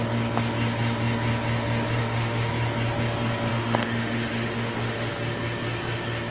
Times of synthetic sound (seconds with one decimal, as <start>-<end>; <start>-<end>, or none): 2.0-2.5; 3.5-5.1